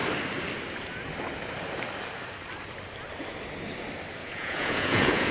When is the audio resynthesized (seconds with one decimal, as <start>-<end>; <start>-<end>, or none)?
4.2-5.3